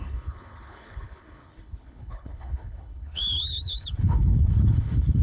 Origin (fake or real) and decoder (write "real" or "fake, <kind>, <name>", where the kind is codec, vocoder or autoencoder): fake, codec, HILCodec